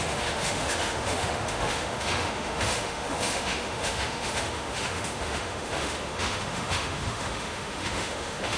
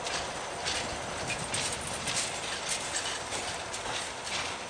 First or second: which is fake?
first